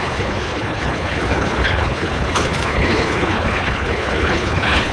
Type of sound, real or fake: fake